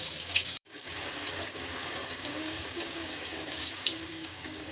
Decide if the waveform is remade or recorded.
remade